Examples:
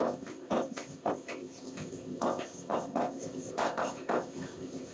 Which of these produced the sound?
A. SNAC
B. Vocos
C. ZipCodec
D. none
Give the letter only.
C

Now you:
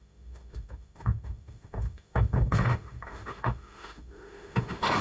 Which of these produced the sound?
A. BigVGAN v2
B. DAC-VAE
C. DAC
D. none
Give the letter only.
B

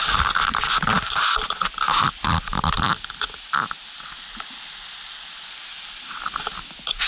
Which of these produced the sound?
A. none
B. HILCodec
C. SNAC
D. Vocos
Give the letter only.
A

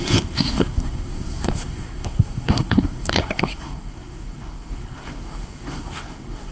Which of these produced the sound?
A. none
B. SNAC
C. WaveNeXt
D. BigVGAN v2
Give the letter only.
B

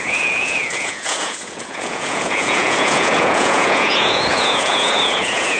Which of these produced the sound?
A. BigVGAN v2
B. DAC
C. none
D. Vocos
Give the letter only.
D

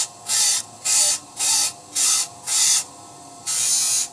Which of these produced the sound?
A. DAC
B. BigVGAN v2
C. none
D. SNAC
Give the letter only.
C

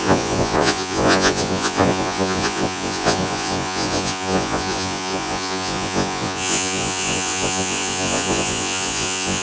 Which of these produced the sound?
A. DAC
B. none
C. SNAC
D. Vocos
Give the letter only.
D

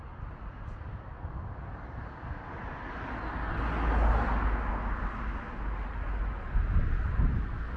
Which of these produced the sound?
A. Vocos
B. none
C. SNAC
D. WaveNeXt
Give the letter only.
B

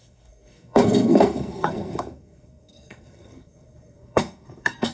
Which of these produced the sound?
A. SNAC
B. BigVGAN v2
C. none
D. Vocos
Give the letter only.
A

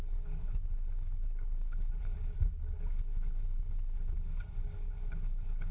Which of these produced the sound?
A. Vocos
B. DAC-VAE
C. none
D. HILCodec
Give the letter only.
D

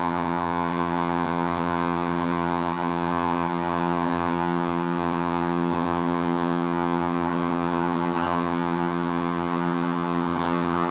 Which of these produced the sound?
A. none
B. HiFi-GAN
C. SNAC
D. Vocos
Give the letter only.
B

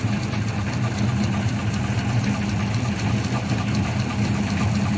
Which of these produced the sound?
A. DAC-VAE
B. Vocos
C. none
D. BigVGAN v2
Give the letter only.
C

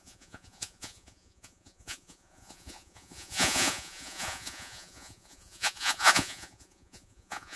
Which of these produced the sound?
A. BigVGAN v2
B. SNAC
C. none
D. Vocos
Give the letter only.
D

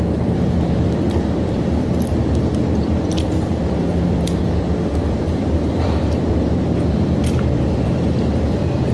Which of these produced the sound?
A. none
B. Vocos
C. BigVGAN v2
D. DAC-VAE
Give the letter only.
C